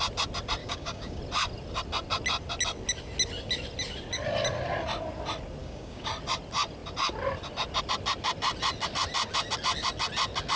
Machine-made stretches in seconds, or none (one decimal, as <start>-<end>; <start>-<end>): 0.6-1.2; 5.6-6.1